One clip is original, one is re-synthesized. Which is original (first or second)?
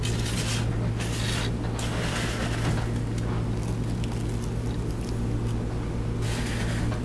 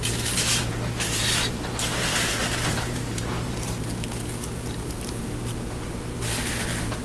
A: first